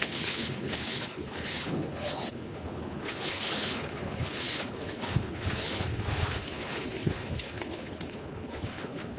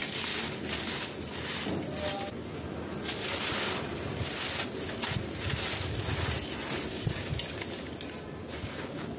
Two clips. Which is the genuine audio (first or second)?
second